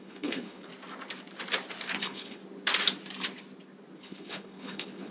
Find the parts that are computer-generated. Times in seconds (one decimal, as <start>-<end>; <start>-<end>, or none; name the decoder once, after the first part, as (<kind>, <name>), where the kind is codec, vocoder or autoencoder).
0.0-0.7 (codec, HILCodec); 2.0-2.4; 4.0-5.1